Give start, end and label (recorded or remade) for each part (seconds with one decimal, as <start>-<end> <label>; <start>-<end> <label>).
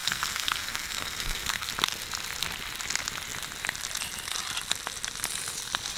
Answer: 0.0-1.7 remade; 1.7-6.0 recorded